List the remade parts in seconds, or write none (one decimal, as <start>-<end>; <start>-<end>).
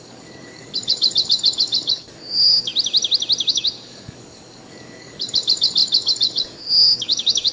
0.0-2.7; 3.5-7.5